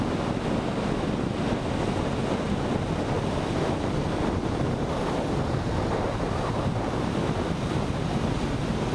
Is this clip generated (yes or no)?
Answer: no